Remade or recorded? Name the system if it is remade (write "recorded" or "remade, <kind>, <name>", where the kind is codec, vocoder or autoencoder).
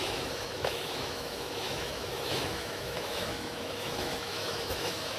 remade, autoencoder, DAC-VAE